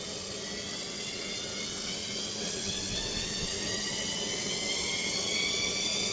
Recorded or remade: remade